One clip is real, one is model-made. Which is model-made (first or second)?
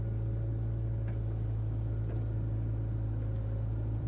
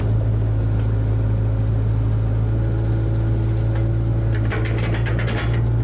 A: first